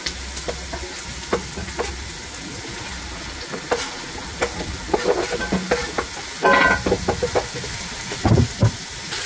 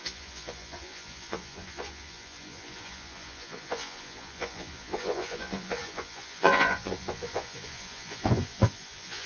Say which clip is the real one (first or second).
first